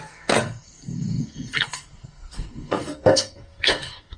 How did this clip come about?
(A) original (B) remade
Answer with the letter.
B